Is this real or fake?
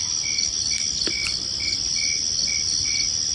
real